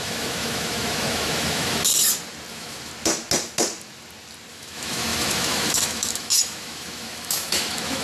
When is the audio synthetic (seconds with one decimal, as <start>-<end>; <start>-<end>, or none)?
0.0-1.9; 2.5-2.9; 4.5-8.0